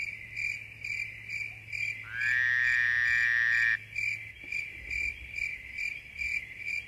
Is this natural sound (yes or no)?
yes